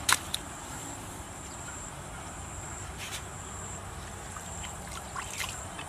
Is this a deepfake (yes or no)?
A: yes